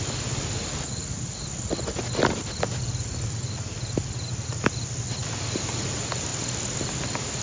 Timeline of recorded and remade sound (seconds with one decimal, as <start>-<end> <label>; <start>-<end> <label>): 0.0-7.4 recorded